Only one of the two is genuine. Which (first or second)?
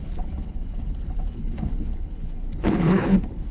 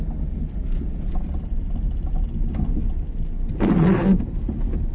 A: second